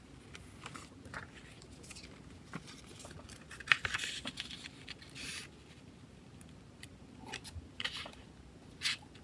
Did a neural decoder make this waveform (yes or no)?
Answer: no